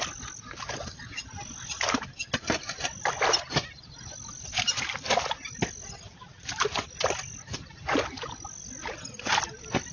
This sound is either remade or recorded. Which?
recorded